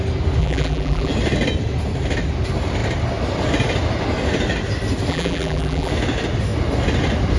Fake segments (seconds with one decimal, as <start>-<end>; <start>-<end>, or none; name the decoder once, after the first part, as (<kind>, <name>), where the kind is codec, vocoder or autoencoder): 0.4-1.1 (vocoder, BigVGAN v2); 5.1-5.9